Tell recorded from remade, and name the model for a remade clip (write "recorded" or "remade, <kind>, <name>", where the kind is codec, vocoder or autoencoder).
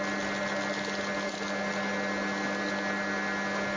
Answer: recorded